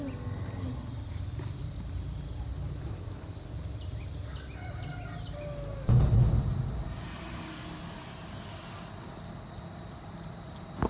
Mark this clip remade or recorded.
recorded